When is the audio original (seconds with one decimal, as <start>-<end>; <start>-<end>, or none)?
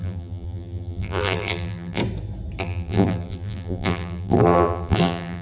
2.0-2.6